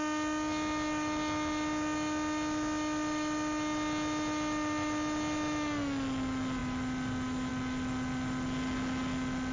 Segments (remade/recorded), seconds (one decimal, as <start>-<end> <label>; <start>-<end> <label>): 0.0-9.5 recorded